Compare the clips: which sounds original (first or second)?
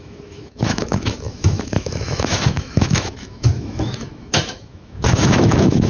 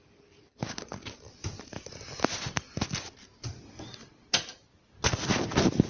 second